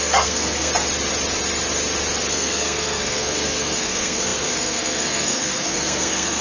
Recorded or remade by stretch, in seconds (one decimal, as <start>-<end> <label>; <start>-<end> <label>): 0.0-0.7 remade; 0.7-2.3 recorded; 2.3-6.4 remade